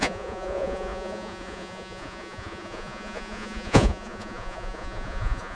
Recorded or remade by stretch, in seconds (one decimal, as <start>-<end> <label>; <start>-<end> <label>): 0.0-5.5 remade